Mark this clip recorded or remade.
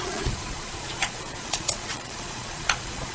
remade